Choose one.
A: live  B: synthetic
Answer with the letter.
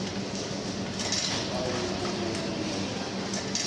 A